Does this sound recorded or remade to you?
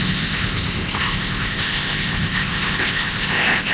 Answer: remade